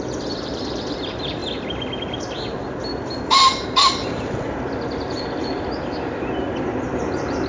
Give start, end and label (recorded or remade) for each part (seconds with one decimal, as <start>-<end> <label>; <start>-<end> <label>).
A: 0.0-7.5 recorded